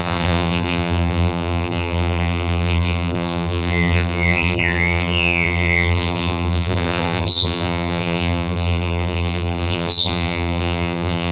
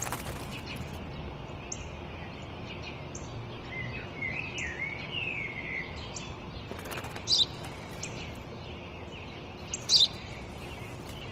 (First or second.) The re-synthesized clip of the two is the first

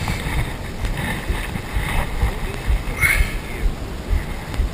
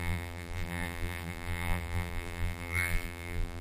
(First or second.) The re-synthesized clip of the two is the second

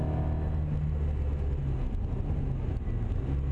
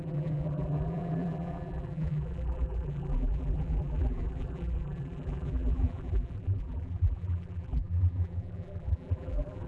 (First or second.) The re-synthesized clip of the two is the second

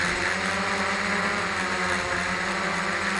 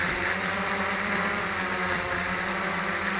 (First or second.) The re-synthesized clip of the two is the second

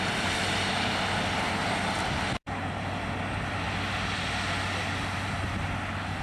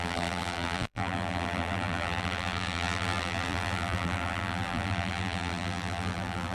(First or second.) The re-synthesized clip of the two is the second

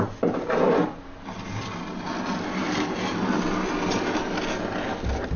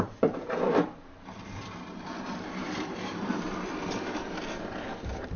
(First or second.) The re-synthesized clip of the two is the second